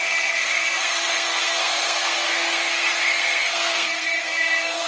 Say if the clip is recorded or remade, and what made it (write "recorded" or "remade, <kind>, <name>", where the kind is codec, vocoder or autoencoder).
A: remade, codec, SNAC